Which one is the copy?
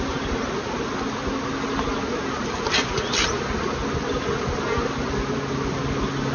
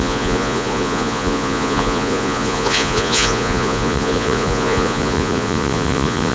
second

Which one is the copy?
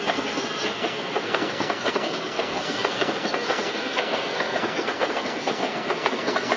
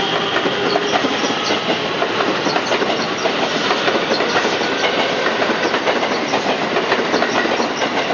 first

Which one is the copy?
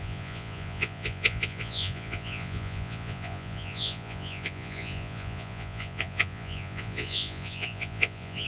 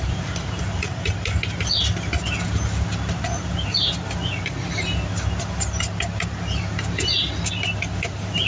first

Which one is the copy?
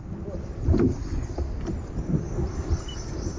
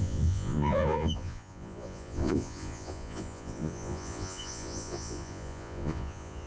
second